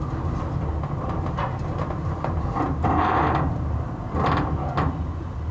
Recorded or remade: recorded